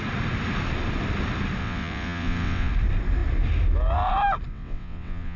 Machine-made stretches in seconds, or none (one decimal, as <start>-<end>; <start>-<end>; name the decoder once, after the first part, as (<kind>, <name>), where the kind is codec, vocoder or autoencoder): 1.6-2.7 (vocoder, WaveNeXt); 4.5-5.4